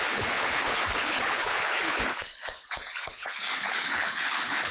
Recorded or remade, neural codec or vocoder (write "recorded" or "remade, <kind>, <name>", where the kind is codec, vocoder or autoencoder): remade, codec, HILCodec